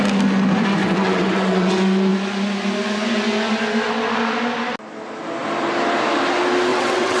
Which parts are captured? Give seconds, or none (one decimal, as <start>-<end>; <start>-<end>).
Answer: 0.0-0.8; 1.7-6.7